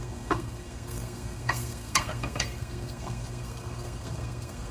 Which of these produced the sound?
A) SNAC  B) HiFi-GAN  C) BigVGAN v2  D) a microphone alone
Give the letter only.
A